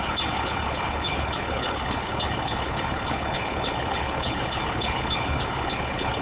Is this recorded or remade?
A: remade